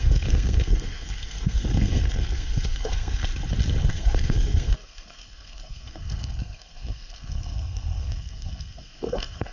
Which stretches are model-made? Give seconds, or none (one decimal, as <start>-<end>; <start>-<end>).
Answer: 0.0-3.3; 3.9-9.5